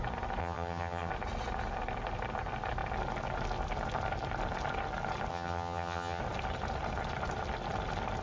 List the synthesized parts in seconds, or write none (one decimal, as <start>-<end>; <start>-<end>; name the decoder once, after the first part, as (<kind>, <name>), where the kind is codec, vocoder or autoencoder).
0.4-1.1 (vocoder, HiFi-GAN); 5.3-6.2